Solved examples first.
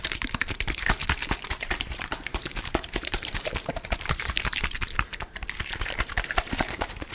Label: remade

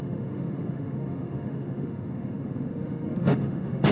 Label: remade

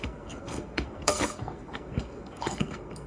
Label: remade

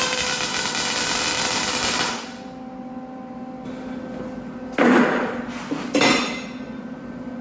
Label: recorded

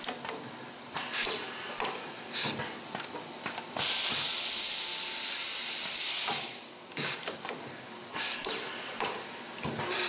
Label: remade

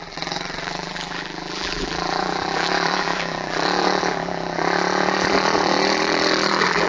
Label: remade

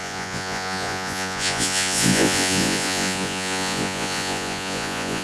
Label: remade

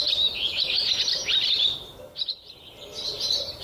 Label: remade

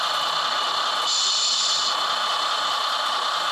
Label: recorded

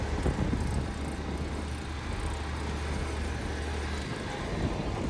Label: recorded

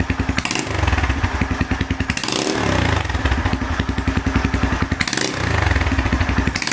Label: recorded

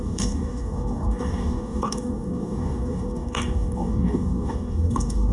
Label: remade